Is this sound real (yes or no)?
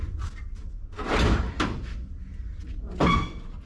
yes